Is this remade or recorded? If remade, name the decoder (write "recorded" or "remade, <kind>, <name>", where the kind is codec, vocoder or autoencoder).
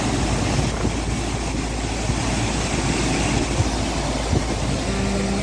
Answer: recorded